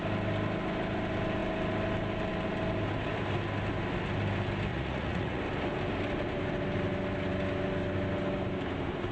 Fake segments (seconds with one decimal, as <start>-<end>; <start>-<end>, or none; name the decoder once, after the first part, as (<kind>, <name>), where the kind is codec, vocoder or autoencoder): 4.7-5.4 (vocoder, Vocos)